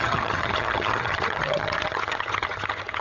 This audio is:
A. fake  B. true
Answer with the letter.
A